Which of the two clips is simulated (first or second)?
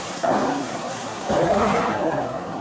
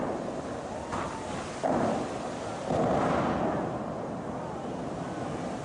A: first